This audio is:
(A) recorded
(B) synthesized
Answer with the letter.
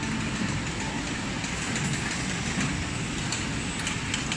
A